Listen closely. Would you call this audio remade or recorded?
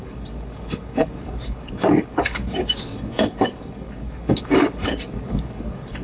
remade